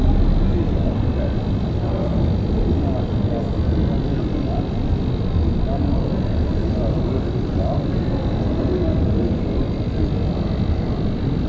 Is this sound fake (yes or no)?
no